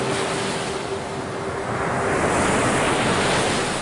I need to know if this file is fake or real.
real